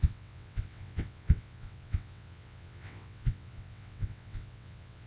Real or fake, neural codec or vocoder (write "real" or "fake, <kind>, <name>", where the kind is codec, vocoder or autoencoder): fake, vocoder, WaveNeXt